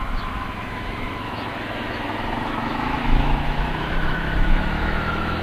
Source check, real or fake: fake